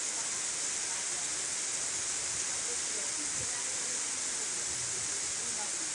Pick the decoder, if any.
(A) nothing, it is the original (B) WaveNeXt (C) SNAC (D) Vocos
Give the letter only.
A